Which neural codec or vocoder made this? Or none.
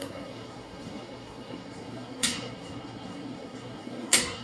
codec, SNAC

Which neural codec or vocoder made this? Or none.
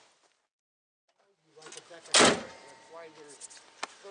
none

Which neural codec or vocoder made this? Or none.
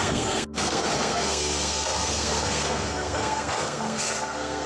codec, SNAC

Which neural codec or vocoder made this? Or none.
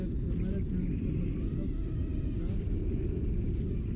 none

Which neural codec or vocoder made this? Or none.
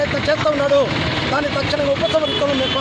none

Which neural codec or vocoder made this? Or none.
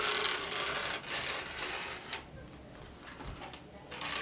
none